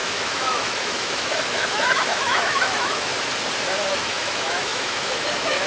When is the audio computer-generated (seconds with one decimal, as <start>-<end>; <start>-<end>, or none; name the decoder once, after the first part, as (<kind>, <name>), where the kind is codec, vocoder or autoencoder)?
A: 0.0-3.1 (autoencoder, DAC-VAE); 3.9-5.7